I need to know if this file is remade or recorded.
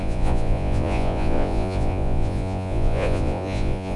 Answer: remade